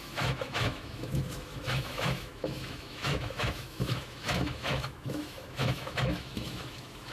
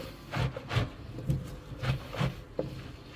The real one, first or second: second